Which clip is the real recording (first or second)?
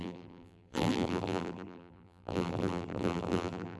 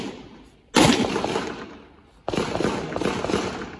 second